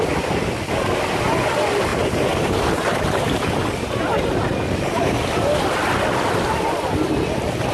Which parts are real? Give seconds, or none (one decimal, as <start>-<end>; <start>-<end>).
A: 0.0-1.9; 5.0-7.7